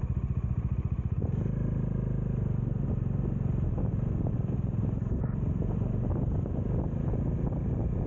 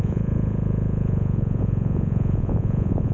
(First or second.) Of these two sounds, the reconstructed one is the second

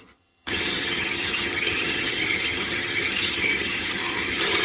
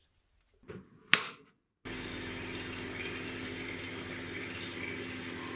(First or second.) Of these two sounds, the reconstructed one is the first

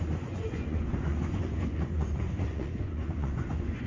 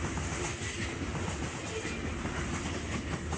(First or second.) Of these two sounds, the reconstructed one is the first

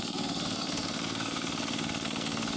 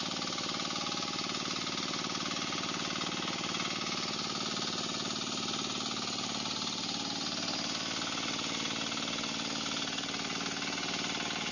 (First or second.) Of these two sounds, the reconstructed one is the first